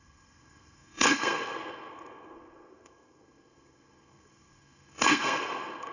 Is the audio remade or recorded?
remade